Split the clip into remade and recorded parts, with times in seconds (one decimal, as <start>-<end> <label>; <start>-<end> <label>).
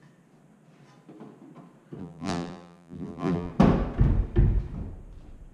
0.0-2.0 recorded; 2.0-3.5 remade; 3.5-5.5 recorded